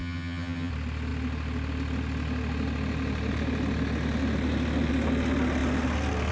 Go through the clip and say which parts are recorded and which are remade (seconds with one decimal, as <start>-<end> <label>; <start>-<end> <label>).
0.0-0.7 remade; 0.7-6.3 recorded